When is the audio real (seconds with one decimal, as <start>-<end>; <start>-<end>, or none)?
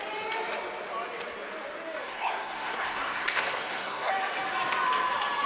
0.0-2.0; 4.1-5.5